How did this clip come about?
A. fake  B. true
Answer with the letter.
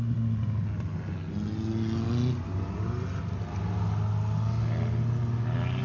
B